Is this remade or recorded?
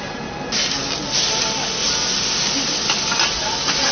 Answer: recorded